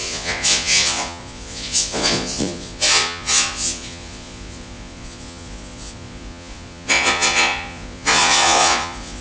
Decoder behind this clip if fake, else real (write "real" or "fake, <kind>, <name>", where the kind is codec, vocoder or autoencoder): fake, vocoder, Vocos